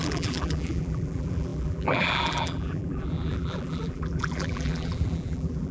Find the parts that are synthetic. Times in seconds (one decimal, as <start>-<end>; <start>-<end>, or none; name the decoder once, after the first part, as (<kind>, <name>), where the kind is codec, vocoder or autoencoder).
0.0-5.7 (vocoder, BigVGAN v2)